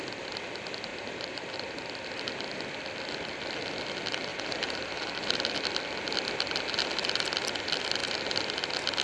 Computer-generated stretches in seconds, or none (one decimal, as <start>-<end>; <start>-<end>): 0.9-1.7; 4.3-5.6